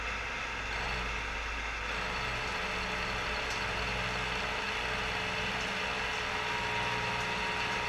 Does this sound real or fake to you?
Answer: real